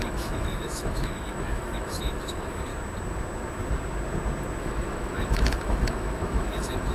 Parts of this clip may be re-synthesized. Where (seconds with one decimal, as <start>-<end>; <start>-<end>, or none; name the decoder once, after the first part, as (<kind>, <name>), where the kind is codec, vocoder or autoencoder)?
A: 0.0-2.7 (autoencoder, DAC-VAE); 4.6-6.9